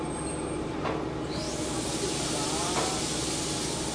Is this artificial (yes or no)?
no